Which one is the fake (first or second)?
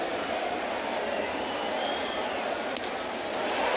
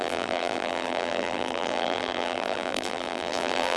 second